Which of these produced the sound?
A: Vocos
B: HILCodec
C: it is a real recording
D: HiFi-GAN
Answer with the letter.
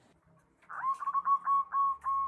C